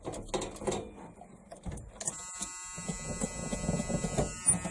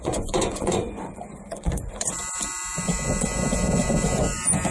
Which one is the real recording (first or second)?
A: first